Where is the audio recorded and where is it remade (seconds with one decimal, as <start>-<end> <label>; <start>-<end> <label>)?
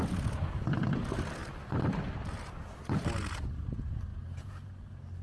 0.0-4.1 recorded; 4.1-4.7 remade; 4.7-5.2 recorded